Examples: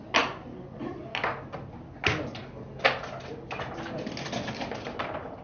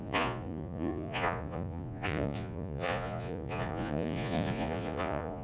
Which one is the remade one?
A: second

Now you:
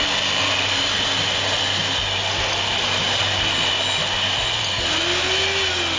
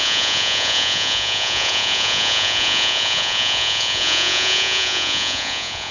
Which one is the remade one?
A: second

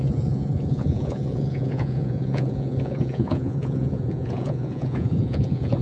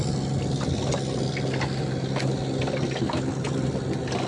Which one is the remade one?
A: first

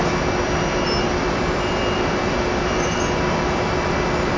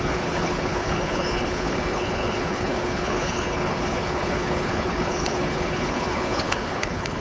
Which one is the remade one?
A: second